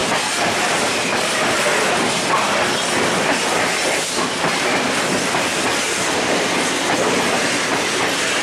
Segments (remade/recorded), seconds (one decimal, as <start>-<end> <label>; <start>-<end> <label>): 0.0-8.4 recorded